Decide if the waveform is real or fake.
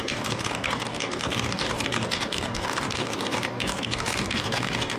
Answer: fake